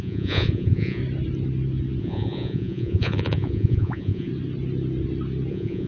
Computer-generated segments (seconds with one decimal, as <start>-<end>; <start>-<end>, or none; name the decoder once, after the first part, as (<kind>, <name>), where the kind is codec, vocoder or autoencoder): 0.0-1.0 (vocoder, Vocos); 2.0-4.3; 5.5-5.9